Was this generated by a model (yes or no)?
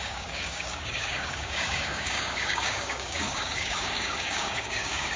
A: yes